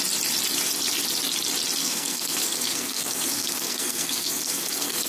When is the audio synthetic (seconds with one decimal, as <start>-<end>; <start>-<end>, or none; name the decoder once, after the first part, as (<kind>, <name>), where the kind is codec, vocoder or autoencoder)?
1.8-5.1 (codec, SNAC)